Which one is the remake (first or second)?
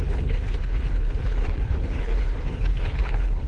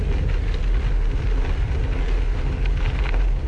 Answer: first